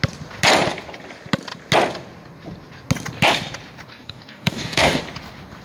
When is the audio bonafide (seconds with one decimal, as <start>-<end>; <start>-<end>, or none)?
0.0-3.9; 5.0-5.6